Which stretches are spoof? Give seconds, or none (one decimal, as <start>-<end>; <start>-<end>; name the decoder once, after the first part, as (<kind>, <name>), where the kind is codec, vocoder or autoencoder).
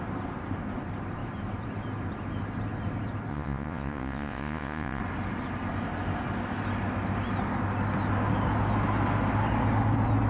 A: 3.3-5.0 (vocoder, Vocos)